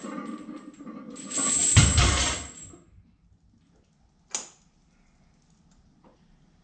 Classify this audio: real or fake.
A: real